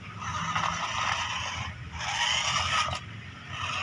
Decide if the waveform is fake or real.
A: real